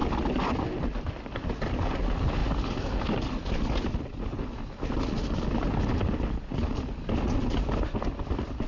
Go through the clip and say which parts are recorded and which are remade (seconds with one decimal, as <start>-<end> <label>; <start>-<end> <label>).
0.0-8.7 recorded